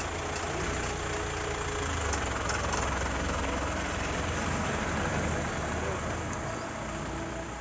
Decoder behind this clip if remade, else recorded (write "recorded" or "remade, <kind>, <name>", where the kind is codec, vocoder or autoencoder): recorded